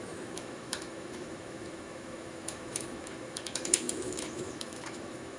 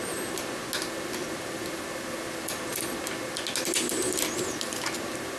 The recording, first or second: second